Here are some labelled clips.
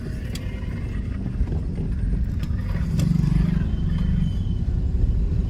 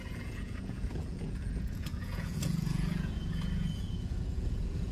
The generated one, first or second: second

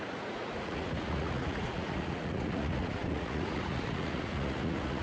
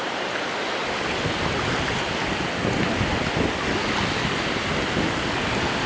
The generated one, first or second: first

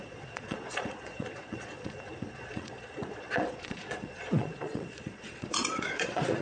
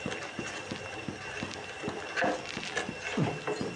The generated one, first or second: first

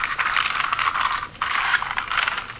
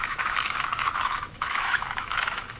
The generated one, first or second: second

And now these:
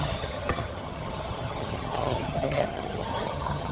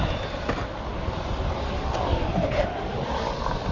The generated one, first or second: first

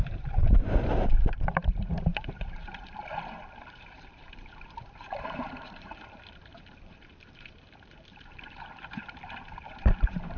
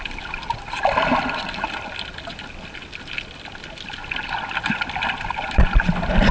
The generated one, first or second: first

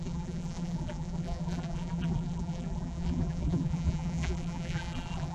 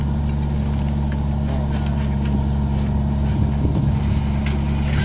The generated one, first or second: first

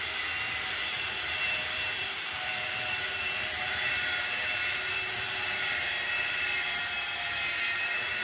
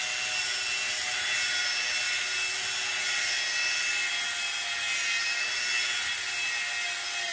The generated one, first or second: first